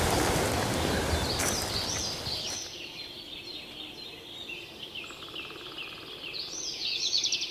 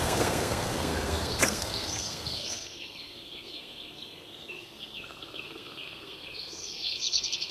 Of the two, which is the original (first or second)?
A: first